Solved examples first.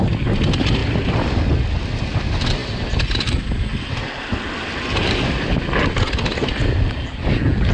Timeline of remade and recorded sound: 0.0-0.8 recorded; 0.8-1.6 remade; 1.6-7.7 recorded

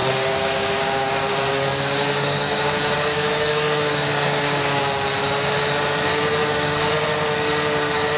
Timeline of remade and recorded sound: 0.0-4.8 remade; 4.8-6.4 recorded; 6.4-6.9 remade; 6.9-8.2 recorded